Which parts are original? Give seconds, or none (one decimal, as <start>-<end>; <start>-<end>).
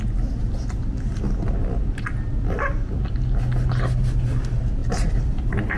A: 0.0-5.8